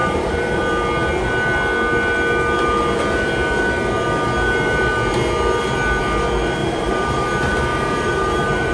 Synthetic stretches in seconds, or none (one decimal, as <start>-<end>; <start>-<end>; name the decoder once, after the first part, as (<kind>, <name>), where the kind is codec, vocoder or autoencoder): 0.0-0.6 (vocoder, BigVGAN v2); 6.6-7.2; 7.7-8.7

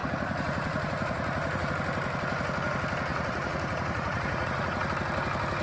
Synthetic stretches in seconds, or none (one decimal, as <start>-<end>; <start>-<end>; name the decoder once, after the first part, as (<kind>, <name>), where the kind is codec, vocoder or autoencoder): 0.0-1.7 (vocoder, Vocos); 3.1-4.9

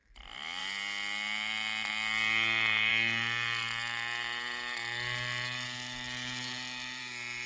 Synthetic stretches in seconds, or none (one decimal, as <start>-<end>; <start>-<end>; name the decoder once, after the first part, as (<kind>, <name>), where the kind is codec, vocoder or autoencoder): none

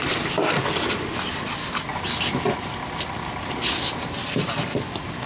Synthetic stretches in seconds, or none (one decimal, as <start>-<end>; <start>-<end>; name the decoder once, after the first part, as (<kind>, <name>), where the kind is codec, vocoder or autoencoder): none

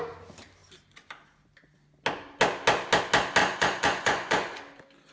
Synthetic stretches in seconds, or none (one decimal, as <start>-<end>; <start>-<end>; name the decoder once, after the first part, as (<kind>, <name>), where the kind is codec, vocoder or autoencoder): 3.4-4.6 (vocoder, Vocos)

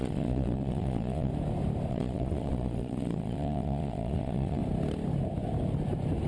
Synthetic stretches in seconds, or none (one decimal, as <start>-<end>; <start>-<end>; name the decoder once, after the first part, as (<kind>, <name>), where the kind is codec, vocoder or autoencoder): 0.0-1.3 (vocoder, Vocos); 1.9-4.6

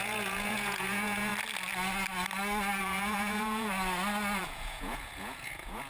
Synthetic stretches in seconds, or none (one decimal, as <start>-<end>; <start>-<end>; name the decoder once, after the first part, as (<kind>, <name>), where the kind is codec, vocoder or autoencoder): 0.0-1.3 (vocoder, Vocos); 2.8-3.7; 4.4-5.9

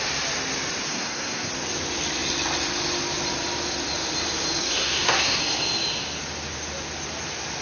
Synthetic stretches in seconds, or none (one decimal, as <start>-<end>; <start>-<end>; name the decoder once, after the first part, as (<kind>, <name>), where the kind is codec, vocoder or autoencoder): 0.9-1.5 (codec, SNAC); 4.6-5.4